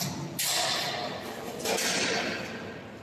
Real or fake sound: real